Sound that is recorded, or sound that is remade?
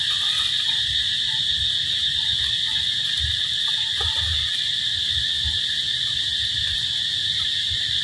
recorded